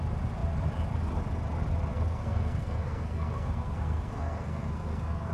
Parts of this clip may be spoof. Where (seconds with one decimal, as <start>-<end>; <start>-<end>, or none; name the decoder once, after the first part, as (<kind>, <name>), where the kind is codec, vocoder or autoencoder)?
1.9-5.3 (codec, SNAC)